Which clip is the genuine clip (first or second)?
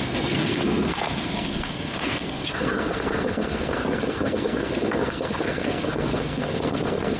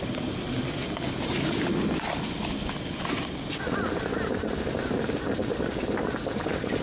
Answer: second